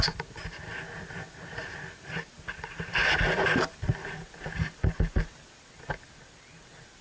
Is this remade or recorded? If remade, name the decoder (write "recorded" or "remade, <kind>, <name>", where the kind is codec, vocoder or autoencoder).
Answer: recorded